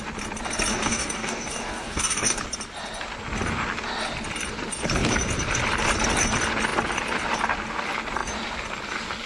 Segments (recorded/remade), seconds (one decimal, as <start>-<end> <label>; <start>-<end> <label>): 0.0-0.7 recorded; 0.7-2.4 remade; 2.4-9.3 recorded